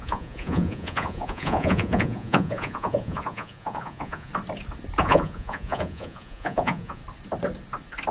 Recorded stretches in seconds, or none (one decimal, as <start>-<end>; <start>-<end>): 4.3-5.0; 7.0-8.1